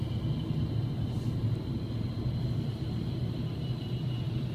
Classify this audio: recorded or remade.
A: recorded